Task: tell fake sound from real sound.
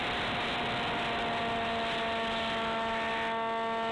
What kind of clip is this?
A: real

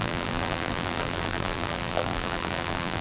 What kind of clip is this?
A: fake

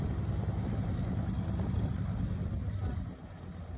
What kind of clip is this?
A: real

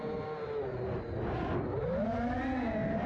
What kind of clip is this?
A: real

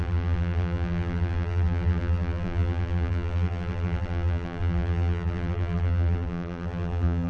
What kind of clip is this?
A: fake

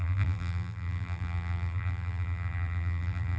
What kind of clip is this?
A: fake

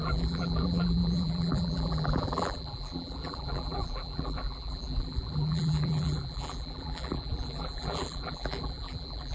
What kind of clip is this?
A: fake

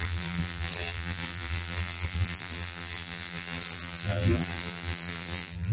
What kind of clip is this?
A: fake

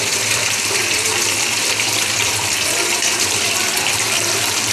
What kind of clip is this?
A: fake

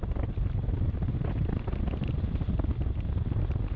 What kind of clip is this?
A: real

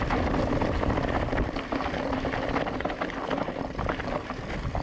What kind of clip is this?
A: real